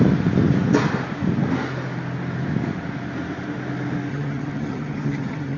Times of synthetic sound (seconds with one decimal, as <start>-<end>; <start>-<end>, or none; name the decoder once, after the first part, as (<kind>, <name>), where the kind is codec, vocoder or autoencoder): 4.1-5.6 (vocoder, HiFi-GAN)